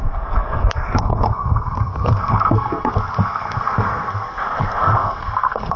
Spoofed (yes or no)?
yes